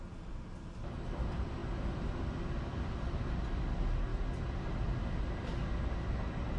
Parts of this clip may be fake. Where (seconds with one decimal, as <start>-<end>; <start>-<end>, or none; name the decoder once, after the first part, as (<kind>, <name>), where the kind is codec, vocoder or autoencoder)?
none